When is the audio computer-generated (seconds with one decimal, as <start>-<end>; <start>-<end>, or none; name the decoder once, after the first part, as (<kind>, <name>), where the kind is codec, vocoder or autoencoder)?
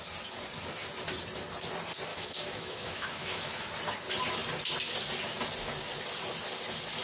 2.1-3.7 (autoencoder, DAC-VAE)